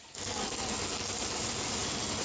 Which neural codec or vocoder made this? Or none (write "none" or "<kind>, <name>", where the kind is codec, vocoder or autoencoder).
none